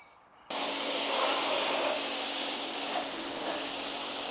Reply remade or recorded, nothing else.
remade